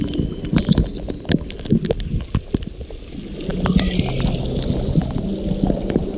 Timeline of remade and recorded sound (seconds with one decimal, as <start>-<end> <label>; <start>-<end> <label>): 0.0-6.2 recorded